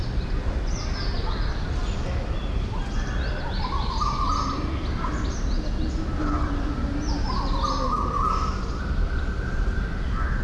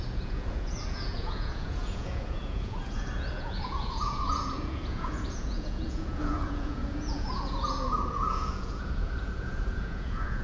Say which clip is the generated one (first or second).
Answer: second